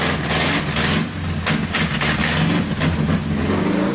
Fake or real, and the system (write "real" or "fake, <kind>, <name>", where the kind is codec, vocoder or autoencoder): real